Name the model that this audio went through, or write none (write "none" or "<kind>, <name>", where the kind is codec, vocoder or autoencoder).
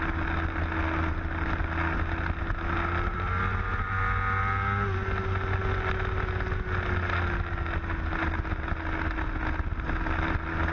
none